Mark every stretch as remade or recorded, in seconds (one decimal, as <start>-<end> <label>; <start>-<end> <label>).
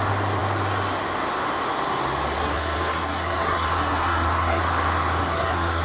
0.0-2.4 recorded; 2.4-4.6 remade; 4.6-5.2 recorded; 5.2-5.8 remade